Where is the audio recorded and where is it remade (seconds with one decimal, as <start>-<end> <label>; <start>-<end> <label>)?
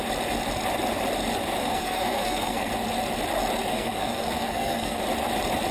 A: 0.0-1.6 recorded; 1.6-2.7 remade; 2.7-3.7 recorded; 3.7-5.0 remade; 5.0-5.7 recorded